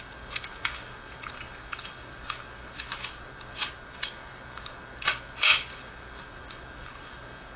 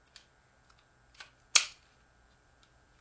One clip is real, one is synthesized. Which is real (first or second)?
second